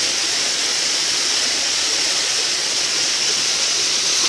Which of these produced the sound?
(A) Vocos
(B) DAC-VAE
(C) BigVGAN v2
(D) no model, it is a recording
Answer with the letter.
A